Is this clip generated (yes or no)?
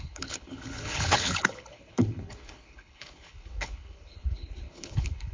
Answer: yes